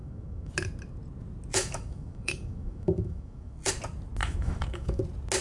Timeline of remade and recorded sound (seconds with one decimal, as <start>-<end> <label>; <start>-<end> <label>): 0.0-0.5 remade; 0.5-1.5 recorded; 1.5-3.7 remade; 3.7-4.2 recorded; 4.2-5.0 remade; 5.0-5.4 recorded